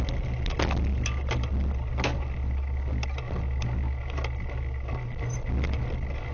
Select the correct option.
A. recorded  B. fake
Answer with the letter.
A